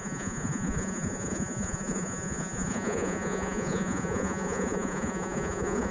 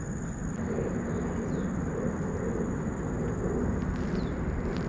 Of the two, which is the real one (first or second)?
second